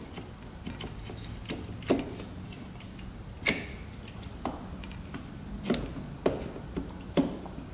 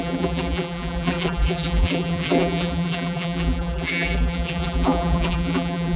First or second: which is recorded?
first